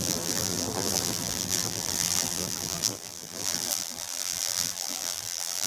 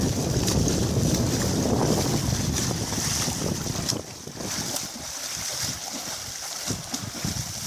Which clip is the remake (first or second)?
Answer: first